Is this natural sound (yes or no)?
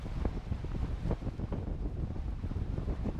no